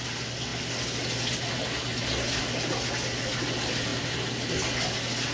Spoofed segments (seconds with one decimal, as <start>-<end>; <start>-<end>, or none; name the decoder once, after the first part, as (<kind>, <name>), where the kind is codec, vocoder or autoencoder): none